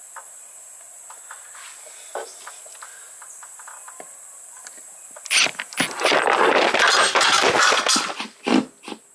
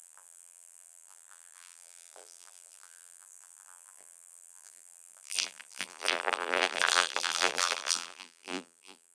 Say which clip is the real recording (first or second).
first